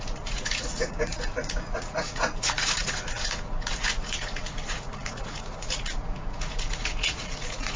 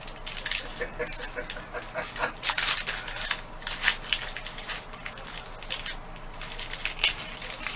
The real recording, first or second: second